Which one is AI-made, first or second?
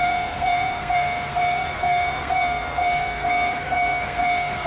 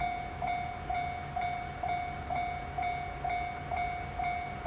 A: first